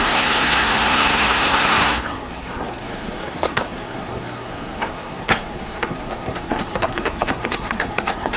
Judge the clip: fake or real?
fake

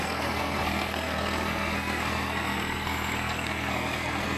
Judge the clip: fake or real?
fake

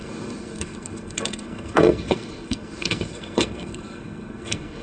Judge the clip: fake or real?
fake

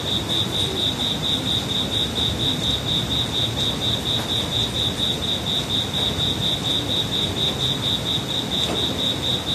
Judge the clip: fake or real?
real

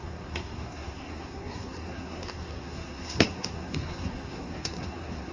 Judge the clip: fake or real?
fake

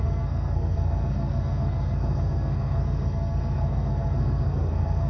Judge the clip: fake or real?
fake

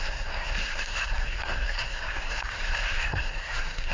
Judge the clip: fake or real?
fake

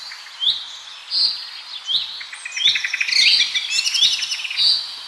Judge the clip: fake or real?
real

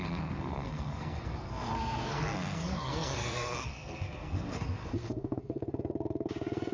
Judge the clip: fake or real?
fake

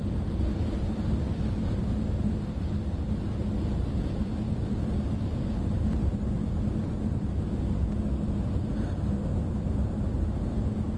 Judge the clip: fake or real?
real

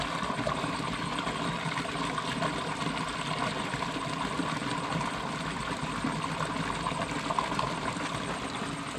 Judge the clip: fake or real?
real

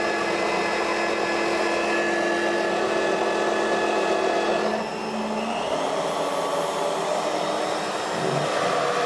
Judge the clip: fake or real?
real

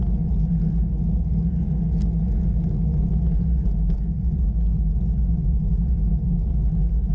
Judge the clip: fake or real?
real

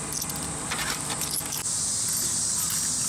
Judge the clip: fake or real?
real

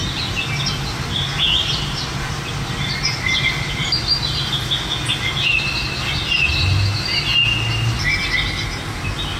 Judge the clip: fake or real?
real